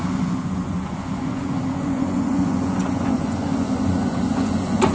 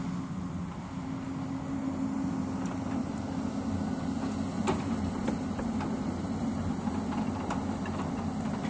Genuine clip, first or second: second